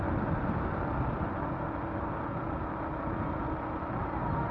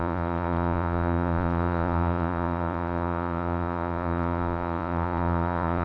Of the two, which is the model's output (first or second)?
second